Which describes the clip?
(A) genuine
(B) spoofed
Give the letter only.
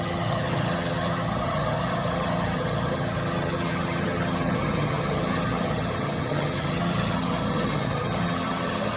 B